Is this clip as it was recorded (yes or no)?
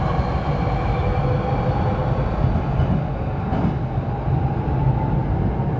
yes